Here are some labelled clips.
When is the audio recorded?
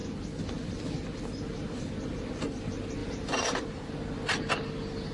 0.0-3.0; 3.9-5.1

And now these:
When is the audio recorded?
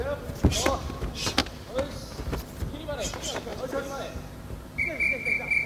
0.0-1.4; 2.1-3.5; 4.8-5.7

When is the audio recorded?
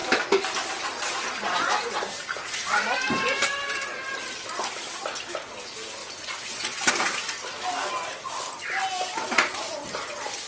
0.0-6.0; 6.9-10.5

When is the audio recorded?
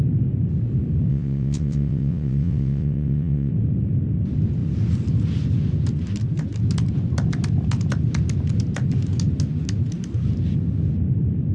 0.0-1.1; 3.5-11.5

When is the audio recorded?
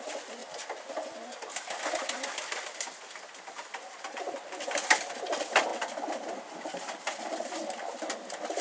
0.0-8.6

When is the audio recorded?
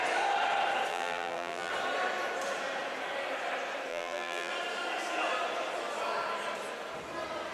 0.0-0.9; 1.7-3.9; 4.5-7.5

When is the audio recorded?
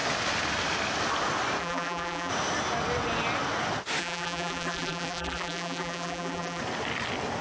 0.0-1.6; 2.3-4.0; 6.6-7.4